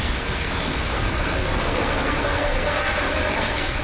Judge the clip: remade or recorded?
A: remade